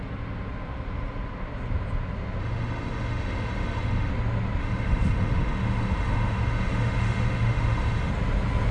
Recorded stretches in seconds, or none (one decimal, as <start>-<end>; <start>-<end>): 0.0-2.4; 4.1-4.6; 8.1-8.7